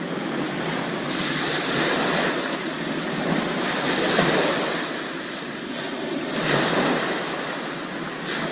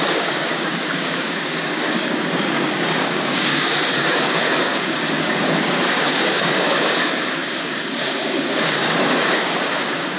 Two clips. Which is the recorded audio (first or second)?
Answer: first